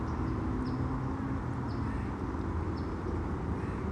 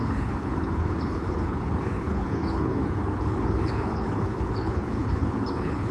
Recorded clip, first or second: first